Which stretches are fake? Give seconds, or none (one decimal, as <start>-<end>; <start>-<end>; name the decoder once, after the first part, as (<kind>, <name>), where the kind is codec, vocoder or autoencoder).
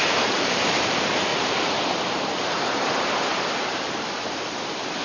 0.0-1.3 (vocoder, BigVGAN v2); 1.9-5.0